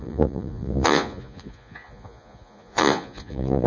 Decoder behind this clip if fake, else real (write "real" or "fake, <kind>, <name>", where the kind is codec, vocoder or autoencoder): fake, vocoder, Vocos